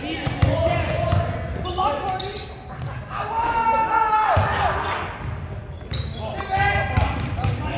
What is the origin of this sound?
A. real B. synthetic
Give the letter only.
A